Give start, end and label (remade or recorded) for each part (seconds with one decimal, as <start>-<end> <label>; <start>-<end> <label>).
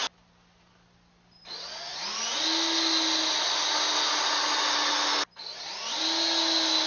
0.0-6.9 recorded